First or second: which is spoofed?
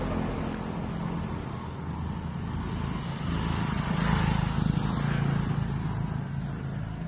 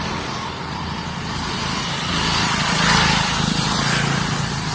second